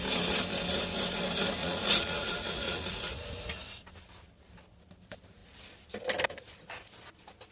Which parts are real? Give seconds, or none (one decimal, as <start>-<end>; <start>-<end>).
0.0-1.6; 3.7-7.5